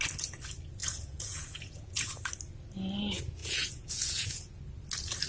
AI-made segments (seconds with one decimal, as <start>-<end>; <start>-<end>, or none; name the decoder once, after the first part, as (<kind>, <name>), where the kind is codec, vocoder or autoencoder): 0.8-2.2 (vocoder, Vocos); 3.4-4.6